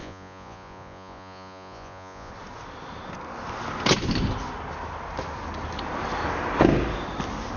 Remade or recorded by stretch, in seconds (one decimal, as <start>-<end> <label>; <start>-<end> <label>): 0.0-2.3 remade; 2.3-7.6 recorded